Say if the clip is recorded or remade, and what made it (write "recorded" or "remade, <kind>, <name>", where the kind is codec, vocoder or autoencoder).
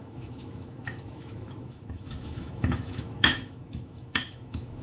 remade, autoencoder, DAC-VAE